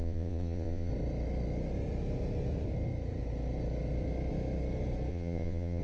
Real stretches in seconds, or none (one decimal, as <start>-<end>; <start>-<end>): 0.9-5.1